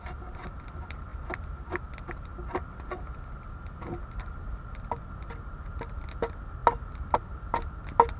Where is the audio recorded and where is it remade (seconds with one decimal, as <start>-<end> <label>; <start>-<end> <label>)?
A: 0.0-6.6 remade; 6.6-7.5 recorded; 7.5-8.2 remade